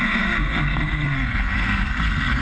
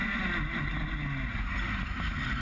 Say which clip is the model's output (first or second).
first